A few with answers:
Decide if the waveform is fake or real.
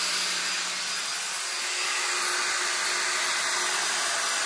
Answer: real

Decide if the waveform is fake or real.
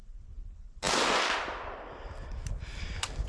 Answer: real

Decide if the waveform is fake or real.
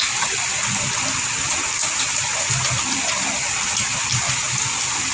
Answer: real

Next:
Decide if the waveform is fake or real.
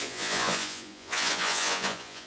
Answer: fake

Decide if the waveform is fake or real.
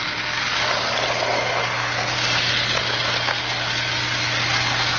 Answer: real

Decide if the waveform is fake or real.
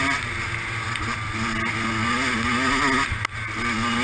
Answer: real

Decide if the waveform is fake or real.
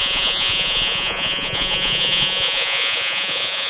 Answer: fake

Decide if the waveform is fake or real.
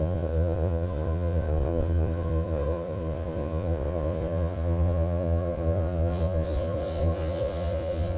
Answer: fake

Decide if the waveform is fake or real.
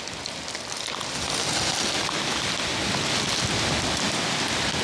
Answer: real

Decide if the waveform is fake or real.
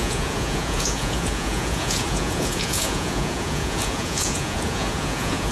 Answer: fake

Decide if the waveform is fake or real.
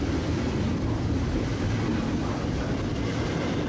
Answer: real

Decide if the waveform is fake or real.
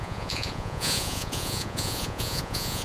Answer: fake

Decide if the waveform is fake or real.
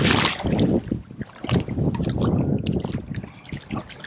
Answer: real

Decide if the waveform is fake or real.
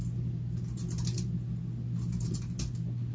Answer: real